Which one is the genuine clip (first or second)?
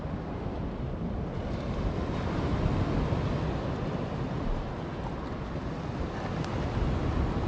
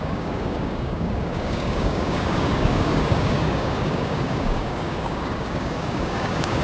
first